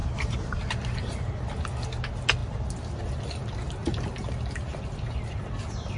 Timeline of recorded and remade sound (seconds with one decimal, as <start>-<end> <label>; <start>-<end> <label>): 0.0-1.3 remade; 1.3-6.0 recorded